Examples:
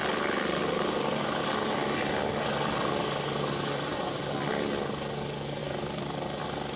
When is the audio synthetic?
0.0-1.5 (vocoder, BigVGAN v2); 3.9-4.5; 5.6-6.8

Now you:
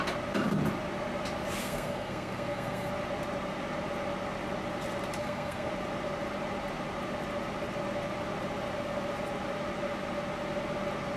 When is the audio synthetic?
1.6-2.9 (codec, SNAC); 5.2-5.7

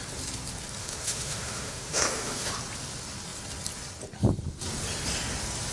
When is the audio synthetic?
0.8-2.5 (autoencoder, DAC-VAE)

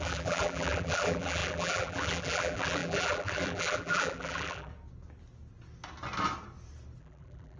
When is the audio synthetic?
0.0-4.7 (vocoder, BigVGAN v2); 7.0-7.6